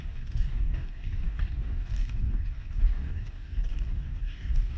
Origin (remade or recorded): remade